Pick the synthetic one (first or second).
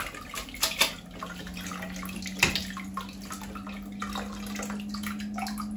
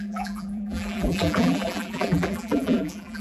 second